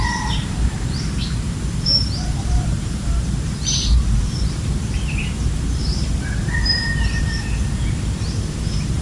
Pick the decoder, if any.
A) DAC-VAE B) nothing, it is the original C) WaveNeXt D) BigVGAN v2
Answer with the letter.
D